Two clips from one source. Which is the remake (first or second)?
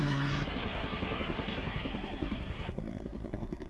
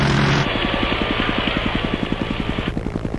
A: first